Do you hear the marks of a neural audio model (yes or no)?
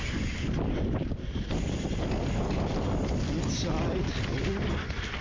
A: no